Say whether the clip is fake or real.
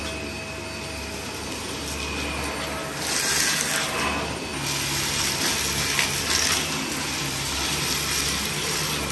real